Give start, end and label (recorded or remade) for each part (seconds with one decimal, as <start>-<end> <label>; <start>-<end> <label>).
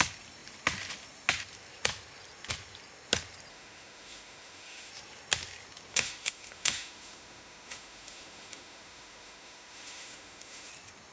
0.0-3.5 recorded; 3.5-4.9 remade; 4.9-5.9 recorded; 5.9-10.7 remade; 10.7-11.1 recorded